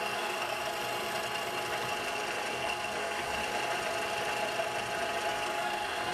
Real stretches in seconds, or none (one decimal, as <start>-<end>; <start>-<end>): 0.6-2.5; 3.4-5.3